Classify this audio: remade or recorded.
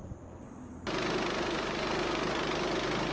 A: recorded